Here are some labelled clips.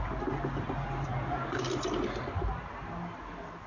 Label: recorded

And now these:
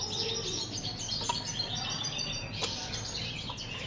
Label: recorded